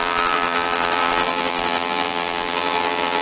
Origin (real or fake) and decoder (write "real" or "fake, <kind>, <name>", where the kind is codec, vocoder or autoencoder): fake, vocoder, BigVGAN v2